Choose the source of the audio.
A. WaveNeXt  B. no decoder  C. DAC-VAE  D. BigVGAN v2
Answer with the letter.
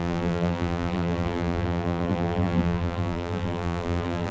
D